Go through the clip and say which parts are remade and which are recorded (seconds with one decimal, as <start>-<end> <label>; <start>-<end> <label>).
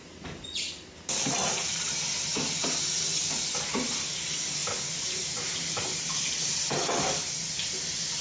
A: 0.0-8.2 recorded